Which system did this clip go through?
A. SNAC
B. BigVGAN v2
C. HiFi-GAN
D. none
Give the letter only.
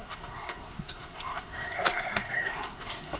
A